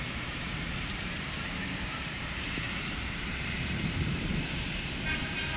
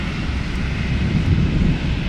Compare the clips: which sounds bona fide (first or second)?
second